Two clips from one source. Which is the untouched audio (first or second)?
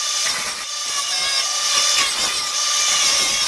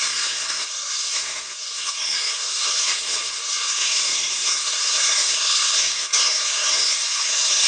first